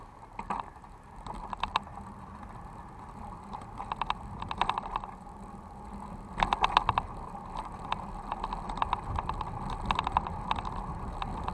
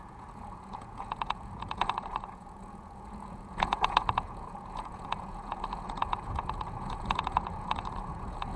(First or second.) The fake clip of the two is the second